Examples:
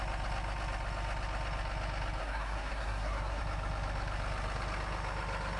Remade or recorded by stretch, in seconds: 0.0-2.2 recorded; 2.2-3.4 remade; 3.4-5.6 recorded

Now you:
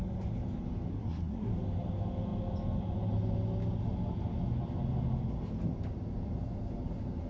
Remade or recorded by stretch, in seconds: 0.0-0.9 recorded; 0.9-1.5 remade; 1.5-7.3 recorded

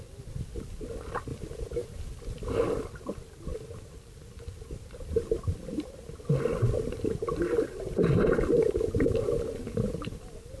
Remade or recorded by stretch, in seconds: 0.0-10.6 recorded

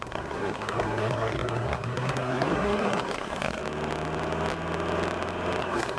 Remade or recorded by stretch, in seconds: 0.0-3.6 remade; 3.6-5.6 recorded; 5.6-6.0 remade

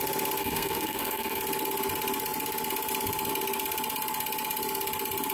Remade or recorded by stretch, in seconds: 0.0-0.4 recorded; 0.4-1.4 remade; 1.4-5.3 recorded

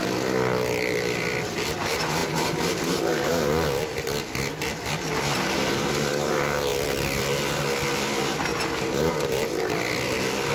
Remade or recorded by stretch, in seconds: 0.0-10.5 recorded

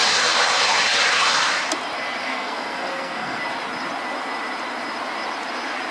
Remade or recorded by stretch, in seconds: 0.0-2.2 recorded; 2.2-3.4 remade; 3.4-5.9 recorded